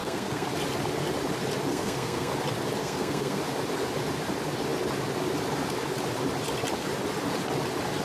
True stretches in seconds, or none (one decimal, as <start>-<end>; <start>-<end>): 0.5-1.7; 2.3-2.8; 3.4-8.0